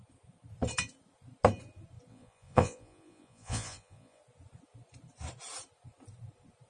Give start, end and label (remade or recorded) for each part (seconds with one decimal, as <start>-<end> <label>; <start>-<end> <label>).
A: 0.0-2.1 recorded; 2.1-4.2 remade; 4.2-6.7 recorded